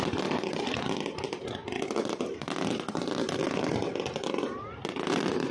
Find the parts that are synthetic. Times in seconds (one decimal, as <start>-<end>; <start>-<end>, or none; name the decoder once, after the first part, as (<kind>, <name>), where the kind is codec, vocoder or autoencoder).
none